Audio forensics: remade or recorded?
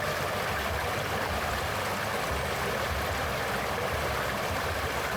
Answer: remade